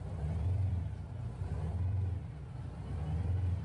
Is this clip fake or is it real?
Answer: fake